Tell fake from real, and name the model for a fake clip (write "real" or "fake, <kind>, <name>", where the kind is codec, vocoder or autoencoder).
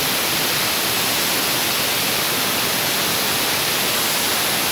real